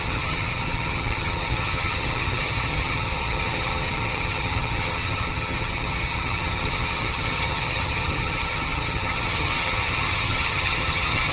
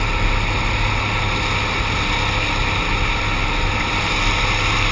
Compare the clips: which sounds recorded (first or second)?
second